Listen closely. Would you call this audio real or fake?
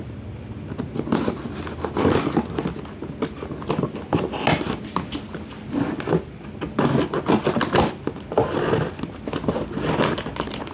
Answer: real